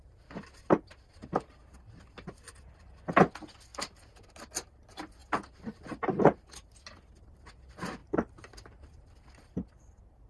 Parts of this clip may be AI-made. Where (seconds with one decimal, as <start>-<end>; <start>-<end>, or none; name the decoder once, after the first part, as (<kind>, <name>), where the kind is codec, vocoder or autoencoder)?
8.0-9.1 (vocoder, BigVGAN v2)